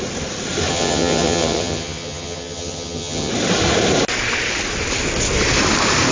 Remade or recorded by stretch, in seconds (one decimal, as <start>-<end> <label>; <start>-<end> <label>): 0.0-0.7 recorded; 0.7-3.3 remade; 3.3-6.1 recorded